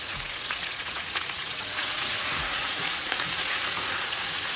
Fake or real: fake